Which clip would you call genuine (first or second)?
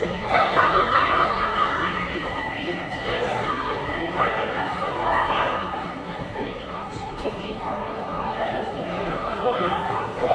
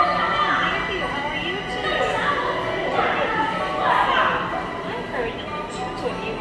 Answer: second